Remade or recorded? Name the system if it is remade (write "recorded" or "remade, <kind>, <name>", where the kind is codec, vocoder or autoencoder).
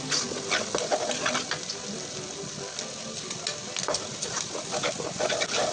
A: recorded